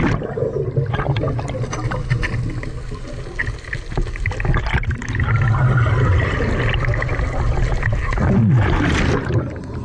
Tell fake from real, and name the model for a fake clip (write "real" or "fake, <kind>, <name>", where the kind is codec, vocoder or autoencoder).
real